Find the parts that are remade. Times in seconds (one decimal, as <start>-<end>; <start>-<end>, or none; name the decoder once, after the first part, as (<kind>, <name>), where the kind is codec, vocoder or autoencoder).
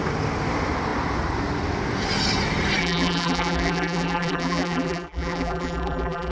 2.8-6.3 (vocoder, BigVGAN v2)